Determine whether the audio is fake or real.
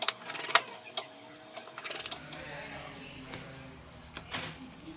real